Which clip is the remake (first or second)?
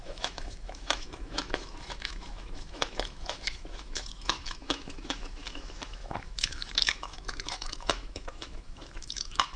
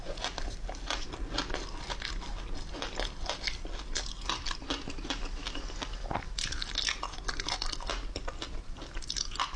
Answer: first